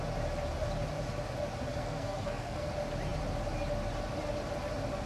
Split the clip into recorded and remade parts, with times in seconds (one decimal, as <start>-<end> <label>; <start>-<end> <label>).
0.0-1.7 recorded; 1.7-2.7 remade; 2.7-5.1 recorded